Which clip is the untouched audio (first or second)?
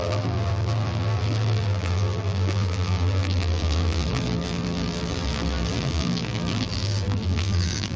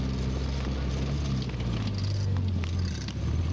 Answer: second